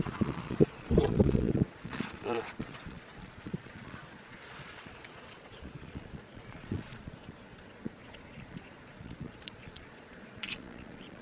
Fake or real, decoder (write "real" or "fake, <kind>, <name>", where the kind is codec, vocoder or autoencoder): fake, vocoder, Vocos